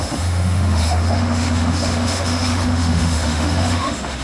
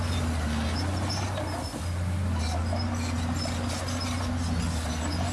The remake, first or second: first